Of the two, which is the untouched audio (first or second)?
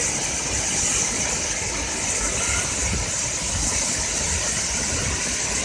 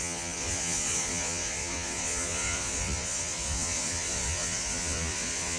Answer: first